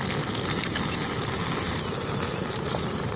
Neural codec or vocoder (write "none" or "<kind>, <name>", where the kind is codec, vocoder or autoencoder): none